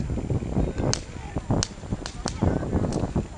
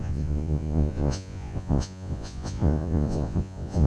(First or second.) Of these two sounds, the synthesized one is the second